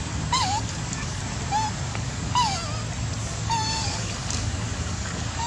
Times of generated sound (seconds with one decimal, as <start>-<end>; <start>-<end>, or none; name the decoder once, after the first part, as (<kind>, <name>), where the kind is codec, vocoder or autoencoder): 0.0-1.2 (codec, DAC); 1.9-2.6; 3.3-5.5